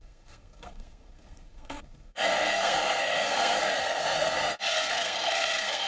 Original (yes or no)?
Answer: no